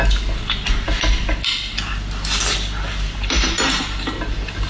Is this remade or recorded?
recorded